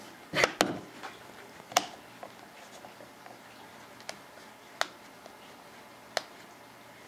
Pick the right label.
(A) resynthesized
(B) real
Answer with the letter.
B